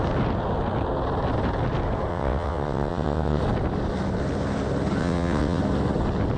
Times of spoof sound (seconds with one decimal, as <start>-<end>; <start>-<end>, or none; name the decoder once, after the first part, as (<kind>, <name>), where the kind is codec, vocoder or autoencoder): 2.1-3.4 (vocoder, WaveNeXt); 5.0-5.6